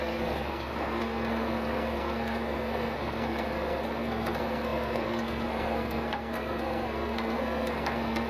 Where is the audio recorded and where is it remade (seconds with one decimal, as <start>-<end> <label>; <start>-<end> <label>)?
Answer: 0.0-8.3 remade